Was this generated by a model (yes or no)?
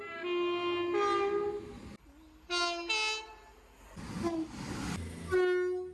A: no